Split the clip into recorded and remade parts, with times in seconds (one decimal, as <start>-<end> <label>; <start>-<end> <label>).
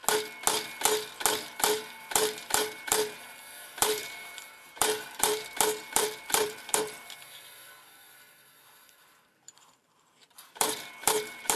0.0-1.4 recorded; 1.4-11.6 remade